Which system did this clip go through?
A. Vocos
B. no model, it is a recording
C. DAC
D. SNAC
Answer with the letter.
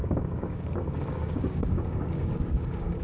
C